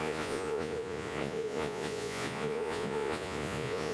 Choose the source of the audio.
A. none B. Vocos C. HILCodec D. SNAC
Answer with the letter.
B